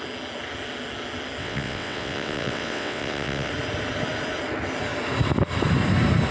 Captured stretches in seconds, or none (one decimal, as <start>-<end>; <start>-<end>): 0.0-1.4; 3.5-6.3